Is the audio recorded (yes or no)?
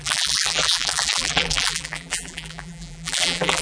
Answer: no